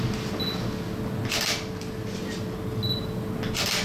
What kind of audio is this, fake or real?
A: real